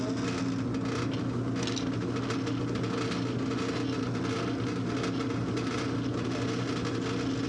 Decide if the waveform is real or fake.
real